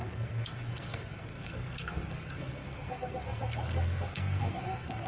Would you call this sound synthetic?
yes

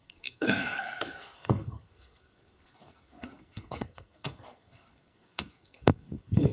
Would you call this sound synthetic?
yes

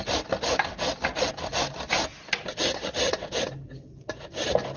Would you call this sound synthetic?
no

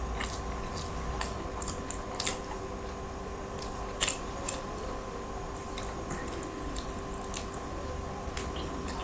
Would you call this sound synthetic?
no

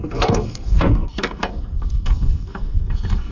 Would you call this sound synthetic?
yes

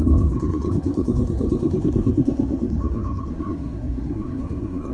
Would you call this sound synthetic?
yes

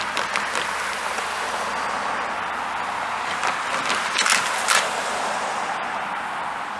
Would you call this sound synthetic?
no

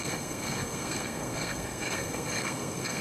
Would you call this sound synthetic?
yes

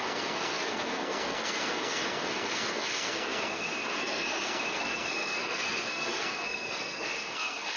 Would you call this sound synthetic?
yes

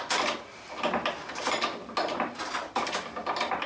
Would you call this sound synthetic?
no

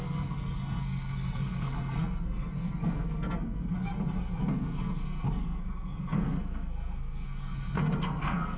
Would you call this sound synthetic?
yes